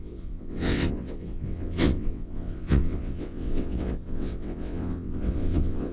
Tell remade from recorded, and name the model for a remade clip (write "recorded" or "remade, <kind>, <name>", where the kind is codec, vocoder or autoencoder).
remade, vocoder, WaveNeXt